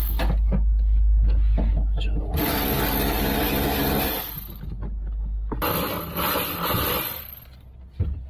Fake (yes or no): no